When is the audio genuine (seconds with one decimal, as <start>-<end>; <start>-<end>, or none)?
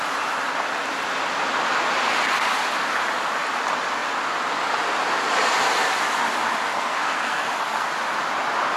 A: 0.0-6.7; 7.9-8.8